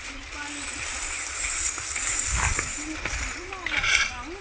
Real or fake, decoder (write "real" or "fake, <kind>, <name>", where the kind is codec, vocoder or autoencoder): real